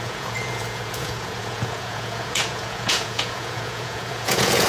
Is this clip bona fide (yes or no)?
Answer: no